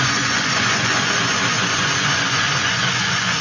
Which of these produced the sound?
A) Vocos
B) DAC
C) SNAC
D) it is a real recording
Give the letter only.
A